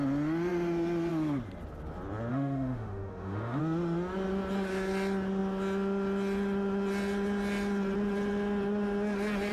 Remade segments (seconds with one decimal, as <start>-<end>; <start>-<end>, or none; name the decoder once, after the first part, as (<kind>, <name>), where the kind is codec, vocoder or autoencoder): 2.3-3.6 (autoencoder, DAC-VAE)